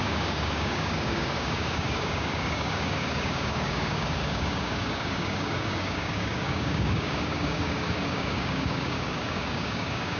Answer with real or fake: fake